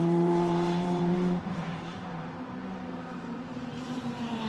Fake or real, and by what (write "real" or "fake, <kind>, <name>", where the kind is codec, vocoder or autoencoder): fake, vocoder, BigVGAN v2